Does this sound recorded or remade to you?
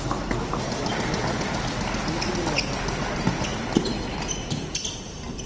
recorded